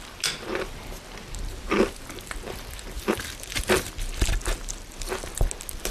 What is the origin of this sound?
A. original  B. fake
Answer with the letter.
A